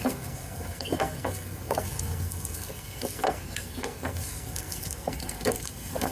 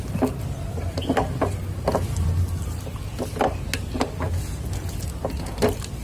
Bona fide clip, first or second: second